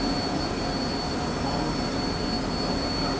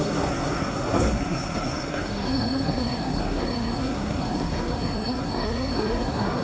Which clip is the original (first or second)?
first